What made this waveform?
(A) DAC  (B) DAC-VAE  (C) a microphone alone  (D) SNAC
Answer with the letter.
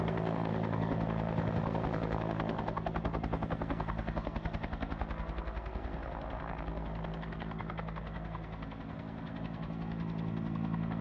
D